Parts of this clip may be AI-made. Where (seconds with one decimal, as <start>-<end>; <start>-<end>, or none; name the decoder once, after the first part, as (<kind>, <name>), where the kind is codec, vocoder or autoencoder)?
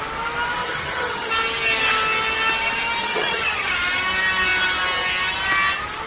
0.6-1.3 (vocoder, HiFi-GAN); 3.0-3.7